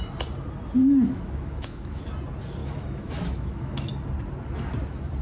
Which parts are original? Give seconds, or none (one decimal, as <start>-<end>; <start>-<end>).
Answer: 0.0-0.8; 2.0-2.6; 3.9-5.2